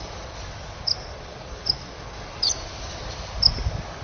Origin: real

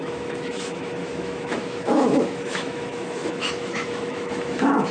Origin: fake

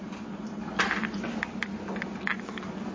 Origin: real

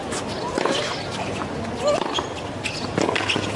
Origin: real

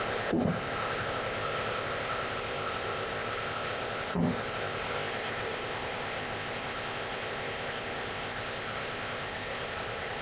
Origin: fake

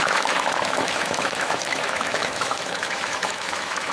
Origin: fake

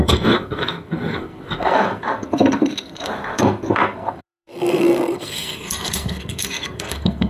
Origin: fake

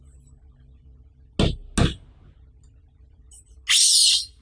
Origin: real